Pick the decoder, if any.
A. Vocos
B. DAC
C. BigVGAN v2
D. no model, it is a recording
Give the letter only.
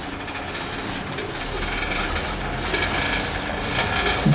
D